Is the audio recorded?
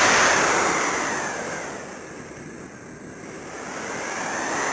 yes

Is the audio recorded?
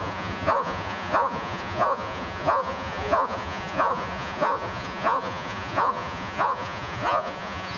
no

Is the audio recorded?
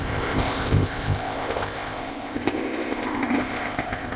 no